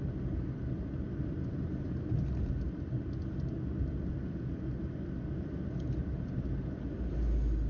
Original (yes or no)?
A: yes